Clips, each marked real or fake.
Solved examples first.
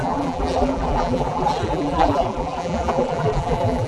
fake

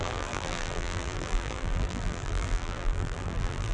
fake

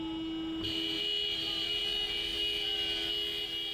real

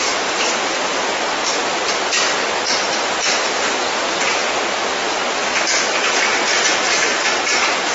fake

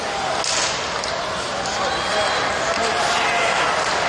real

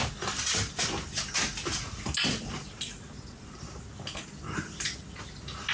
real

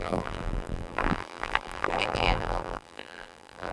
fake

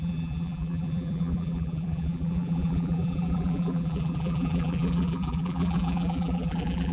fake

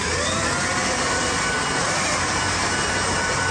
real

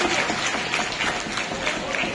real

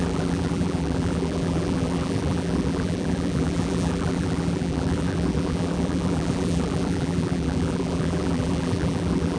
fake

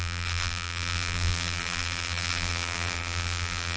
fake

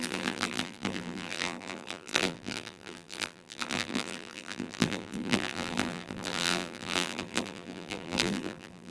fake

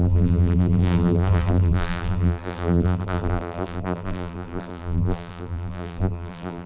fake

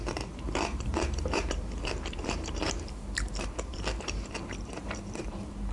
fake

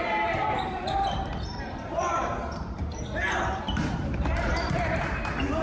fake